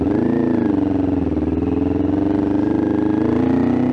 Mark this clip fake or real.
real